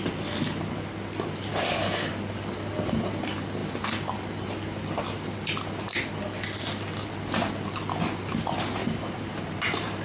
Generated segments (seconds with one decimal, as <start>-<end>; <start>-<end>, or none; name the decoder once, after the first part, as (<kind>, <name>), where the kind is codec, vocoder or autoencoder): 8.8-10.0 (vocoder, BigVGAN v2)